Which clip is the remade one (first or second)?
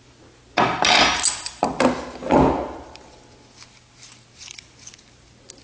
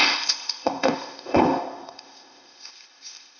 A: second